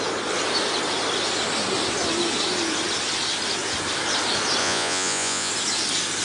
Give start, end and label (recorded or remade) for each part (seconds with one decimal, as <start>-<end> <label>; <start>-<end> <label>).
0.0-4.6 recorded; 4.6-5.5 remade; 5.5-6.2 recorded